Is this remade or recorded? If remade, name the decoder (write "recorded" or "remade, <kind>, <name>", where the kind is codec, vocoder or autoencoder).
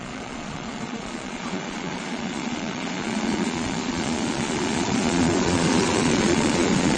remade, vocoder, Vocos